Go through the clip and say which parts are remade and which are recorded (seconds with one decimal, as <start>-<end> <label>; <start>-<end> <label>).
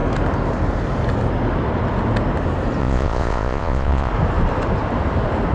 0.0-2.8 recorded; 2.8-4.1 remade; 4.1-5.5 recorded